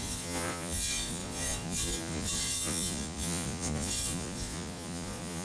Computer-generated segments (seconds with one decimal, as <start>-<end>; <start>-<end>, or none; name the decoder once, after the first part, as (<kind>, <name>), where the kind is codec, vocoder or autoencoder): 0.0-5.4 (vocoder, Vocos)